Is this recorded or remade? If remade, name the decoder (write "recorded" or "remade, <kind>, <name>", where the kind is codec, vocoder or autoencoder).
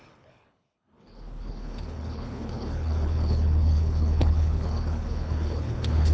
remade, codec, HILCodec